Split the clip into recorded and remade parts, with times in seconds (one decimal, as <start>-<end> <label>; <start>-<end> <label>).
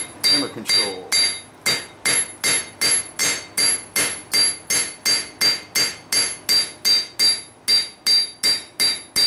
0.0-9.3 recorded